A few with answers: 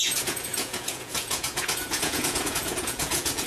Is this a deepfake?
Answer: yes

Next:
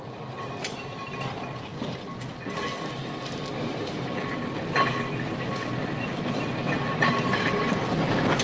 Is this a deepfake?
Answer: no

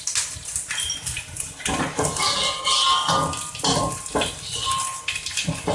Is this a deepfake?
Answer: no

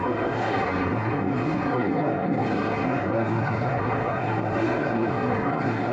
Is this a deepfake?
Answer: yes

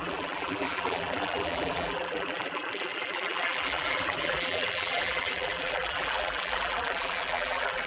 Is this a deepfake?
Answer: yes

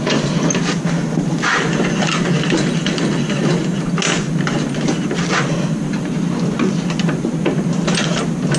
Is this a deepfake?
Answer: no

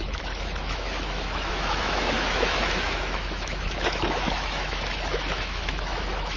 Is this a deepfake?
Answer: yes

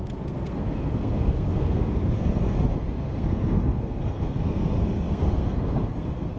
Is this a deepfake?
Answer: yes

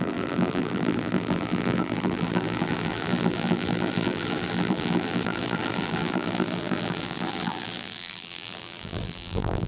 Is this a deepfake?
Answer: yes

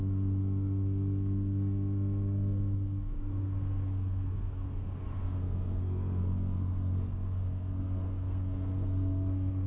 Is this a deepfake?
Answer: yes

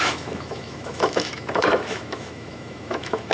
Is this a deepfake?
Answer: yes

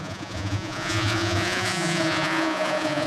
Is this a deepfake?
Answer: yes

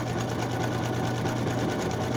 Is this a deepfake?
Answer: no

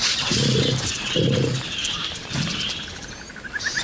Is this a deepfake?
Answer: no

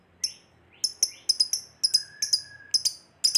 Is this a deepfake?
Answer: no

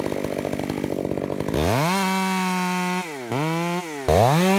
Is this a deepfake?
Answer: no